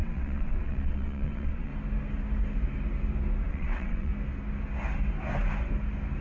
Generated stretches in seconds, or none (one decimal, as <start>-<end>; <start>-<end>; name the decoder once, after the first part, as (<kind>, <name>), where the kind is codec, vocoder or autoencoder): 0.0-1.7 (vocoder, WaveNeXt); 3.5-4.1